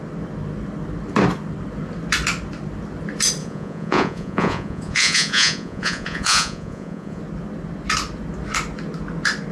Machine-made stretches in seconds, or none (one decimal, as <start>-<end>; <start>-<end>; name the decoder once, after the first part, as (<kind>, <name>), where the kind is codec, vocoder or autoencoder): 3.4-7.2 (vocoder, Vocos)

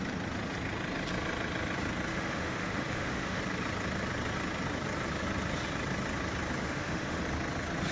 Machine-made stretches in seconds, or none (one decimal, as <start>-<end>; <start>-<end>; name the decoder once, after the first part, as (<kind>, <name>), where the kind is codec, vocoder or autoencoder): 2.1-3.4 (autoencoder, DAC-VAE); 6.6-7.2

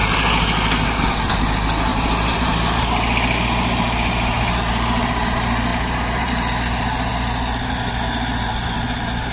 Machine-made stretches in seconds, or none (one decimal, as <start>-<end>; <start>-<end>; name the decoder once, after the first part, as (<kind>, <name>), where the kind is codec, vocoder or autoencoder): 1.9-2.8 (vocoder, BigVGAN v2); 5.7-6.3

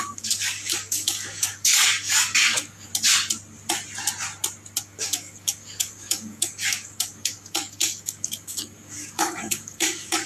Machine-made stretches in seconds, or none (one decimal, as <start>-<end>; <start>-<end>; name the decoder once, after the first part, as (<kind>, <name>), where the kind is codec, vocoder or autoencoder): 0.0-2.9 (codec, DAC); 4.8-10.3